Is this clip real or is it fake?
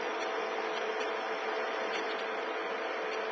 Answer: real